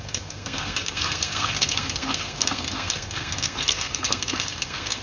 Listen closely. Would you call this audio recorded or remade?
remade